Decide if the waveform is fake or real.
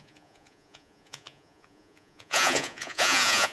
fake